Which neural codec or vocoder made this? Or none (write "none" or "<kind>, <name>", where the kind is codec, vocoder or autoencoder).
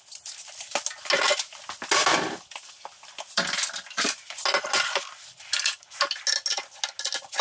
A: none